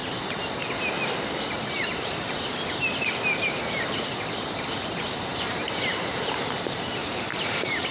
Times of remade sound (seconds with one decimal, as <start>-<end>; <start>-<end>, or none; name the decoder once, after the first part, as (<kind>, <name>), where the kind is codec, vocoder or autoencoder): 3.4-7.9 (vocoder, BigVGAN v2)